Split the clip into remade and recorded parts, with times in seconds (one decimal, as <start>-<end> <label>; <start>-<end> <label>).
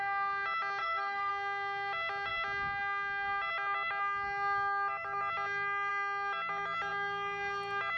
0.0-0.8 recorded; 0.8-1.3 remade; 1.3-8.0 recorded